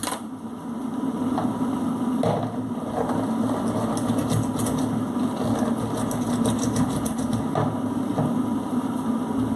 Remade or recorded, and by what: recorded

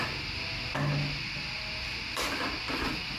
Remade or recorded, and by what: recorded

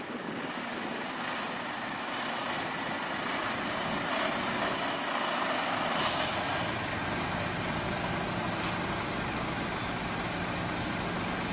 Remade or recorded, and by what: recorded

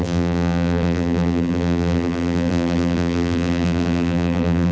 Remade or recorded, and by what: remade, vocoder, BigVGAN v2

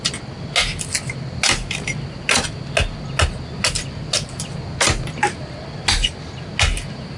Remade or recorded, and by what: recorded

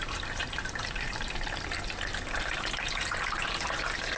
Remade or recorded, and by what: remade, vocoder, BigVGAN v2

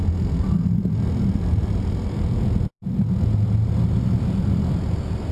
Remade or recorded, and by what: remade, vocoder, BigVGAN v2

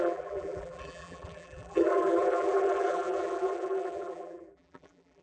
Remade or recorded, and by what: remade, vocoder, BigVGAN v2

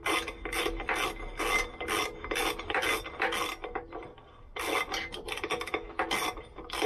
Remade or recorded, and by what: recorded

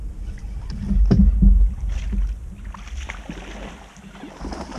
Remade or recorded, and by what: recorded